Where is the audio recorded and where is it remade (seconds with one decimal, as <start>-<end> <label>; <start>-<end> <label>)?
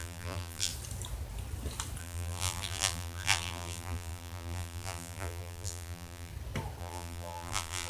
0.0-0.7 remade; 0.7-2.0 recorded; 2.0-6.3 remade; 6.3-6.8 recorded; 6.8-7.9 remade